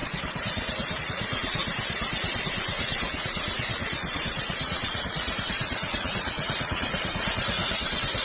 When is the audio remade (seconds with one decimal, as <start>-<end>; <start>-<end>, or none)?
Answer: 1.0-1.6; 2.5-8.2